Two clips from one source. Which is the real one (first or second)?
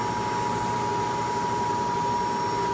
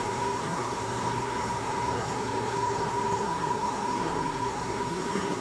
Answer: first